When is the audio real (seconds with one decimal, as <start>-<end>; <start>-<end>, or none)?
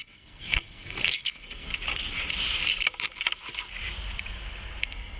1.7-4.8